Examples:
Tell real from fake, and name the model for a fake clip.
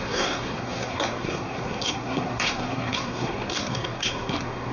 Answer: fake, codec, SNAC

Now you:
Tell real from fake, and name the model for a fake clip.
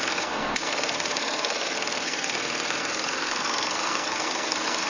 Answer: fake, codec, SNAC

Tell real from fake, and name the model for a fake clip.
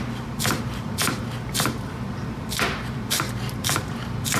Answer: real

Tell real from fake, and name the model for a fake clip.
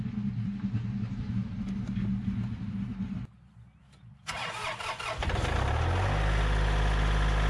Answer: real